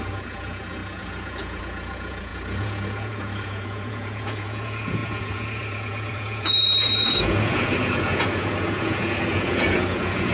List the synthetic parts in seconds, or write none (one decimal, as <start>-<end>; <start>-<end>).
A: 0.0-10.3